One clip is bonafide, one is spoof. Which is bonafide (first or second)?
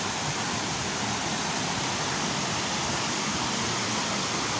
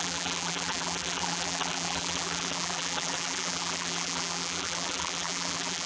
first